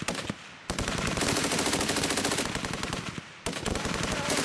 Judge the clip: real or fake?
real